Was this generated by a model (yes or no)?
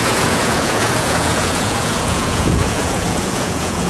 yes